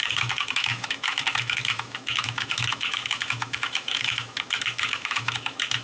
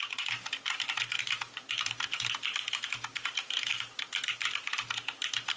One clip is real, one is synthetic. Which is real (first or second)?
second